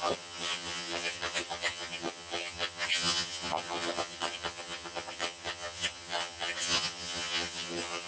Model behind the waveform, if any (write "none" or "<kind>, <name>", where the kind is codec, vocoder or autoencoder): vocoder, HiFi-GAN